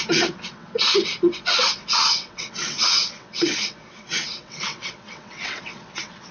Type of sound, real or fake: fake